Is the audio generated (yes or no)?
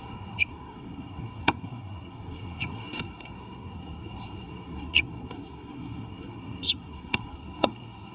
yes